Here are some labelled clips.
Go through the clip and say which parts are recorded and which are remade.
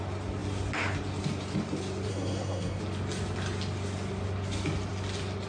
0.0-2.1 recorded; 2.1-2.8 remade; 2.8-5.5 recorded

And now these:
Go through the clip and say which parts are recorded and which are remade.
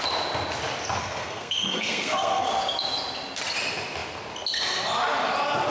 0.0-1.0 recorded; 1.0-2.5 remade; 2.5-5.7 recorded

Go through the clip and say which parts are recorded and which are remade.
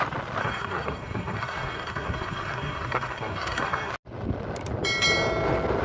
0.0-0.4 recorded; 0.4-3.9 remade; 3.9-5.8 recorded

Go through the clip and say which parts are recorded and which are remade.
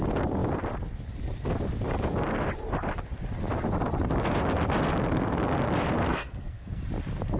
0.0-6.1 recorded; 6.1-6.8 remade; 6.8-7.4 recorded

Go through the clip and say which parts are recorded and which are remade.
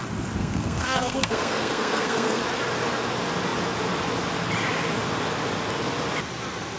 0.0-0.4 recorded; 0.4-2.4 remade; 2.4-6.8 recorded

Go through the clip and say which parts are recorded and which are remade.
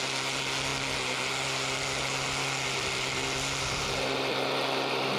0.0-5.2 recorded